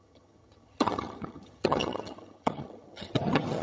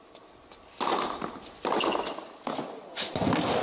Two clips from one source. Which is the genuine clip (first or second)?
second